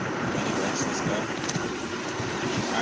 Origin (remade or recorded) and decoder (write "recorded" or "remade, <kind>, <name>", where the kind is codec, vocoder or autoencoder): remade, vocoder, BigVGAN v2